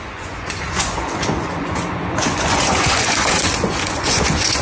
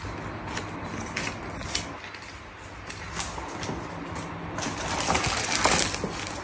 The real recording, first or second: second